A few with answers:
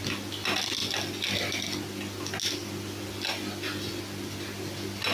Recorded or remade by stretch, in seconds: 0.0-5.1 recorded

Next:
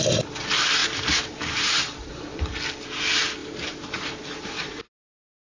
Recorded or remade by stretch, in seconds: 0.0-0.8 recorded; 0.8-2.2 remade; 2.2-3.4 recorded; 3.4-4.8 remade; 4.8-5.5 recorded

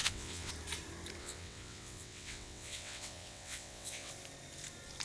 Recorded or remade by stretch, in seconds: 0.0-0.5 remade; 0.5-1.2 recorded; 1.2-4.1 remade; 4.1-5.0 recorded

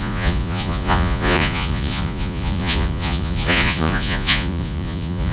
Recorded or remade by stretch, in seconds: 0.0-5.3 remade

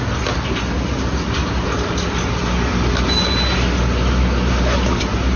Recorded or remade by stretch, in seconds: 0.0-5.4 recorded

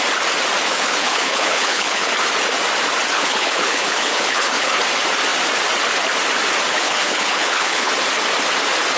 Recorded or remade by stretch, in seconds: 0.0-0.6 recorded; 0.6-2.1 remade; 2.1-3.1 recorded; 3.1-4.8 remade; 4.8-6.7 recorded; 6.7-7.9 remade; 7.9-9.0 recorded